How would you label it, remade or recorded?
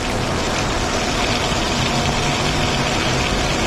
recorded